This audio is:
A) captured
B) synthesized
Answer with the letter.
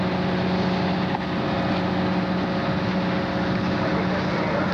A